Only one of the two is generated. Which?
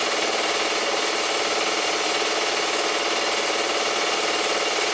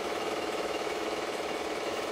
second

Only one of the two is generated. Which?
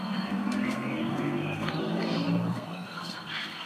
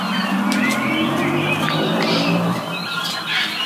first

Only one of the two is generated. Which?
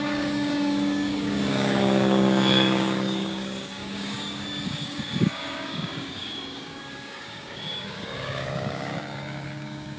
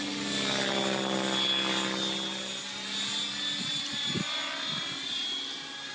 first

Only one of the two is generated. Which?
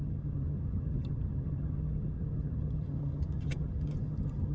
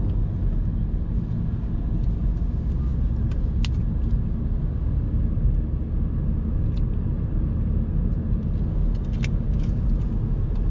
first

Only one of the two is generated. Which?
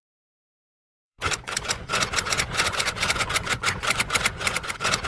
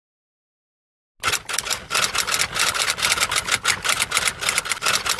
first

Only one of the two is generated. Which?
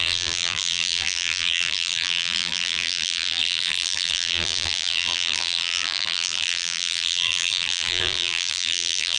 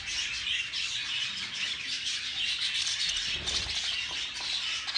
first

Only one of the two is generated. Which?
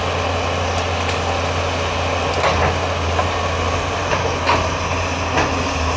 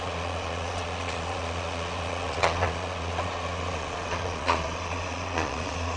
second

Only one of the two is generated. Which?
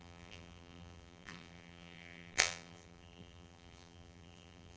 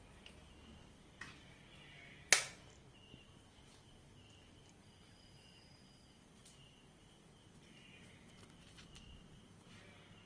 first